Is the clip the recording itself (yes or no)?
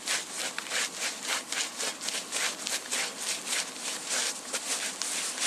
yes